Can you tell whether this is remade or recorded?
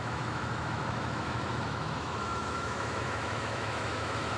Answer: remade